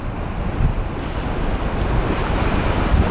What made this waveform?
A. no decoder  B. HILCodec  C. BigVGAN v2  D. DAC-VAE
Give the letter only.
A